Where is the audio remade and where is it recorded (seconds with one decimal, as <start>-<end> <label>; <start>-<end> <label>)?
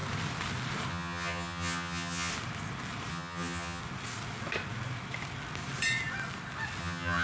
0.0-0.9 recorded; 0.9-2.3 remade; 2.3-3.1 recorded; 3.1-3.8 remade; 3.8-6.8 recorded; 6.8-7.2 remade